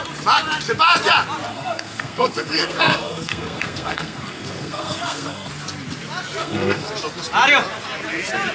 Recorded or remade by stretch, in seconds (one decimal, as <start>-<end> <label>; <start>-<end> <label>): 0.0-1.5 recorded; 1.5-5.5 remade; 5.5-6.4 recorded; 6.4-6.9 remade; 6.9-8.5 recorded